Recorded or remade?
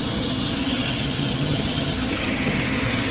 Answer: remade